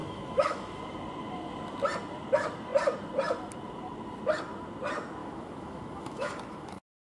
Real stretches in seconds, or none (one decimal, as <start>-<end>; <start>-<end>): 0.8-5.2

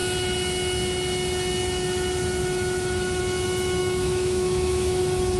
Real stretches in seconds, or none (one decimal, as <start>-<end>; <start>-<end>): 0.0-3.8; 5.0-5.4

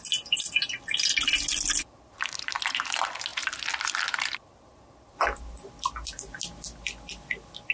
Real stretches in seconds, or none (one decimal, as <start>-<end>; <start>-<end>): 0.0-7.7

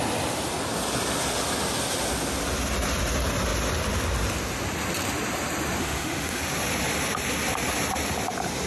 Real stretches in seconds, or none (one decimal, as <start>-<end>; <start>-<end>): 0.0-5.8; 6.4-8.7

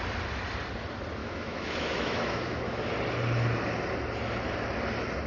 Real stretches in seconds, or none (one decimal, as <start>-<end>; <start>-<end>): 0.0-1.2; 2.9-5.3

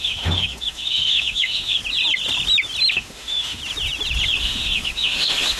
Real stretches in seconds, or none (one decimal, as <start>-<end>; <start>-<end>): 1.8-2.9; 3.6-4.4

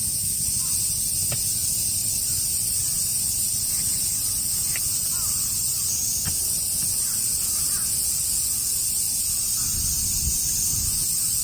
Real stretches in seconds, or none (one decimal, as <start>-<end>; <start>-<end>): 0.0-11.4

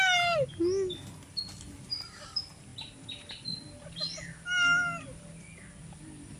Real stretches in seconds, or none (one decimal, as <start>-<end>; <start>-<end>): 0.0-6.4